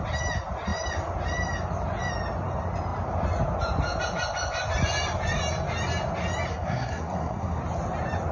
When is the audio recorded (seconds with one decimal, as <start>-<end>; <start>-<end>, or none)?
0.0-6.5; 7.6-8.3